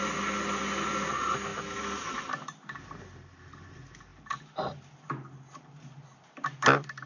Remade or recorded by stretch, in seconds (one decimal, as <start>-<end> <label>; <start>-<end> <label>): 0.0-7.1 recorded